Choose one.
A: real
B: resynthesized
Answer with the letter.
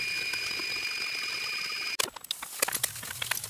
A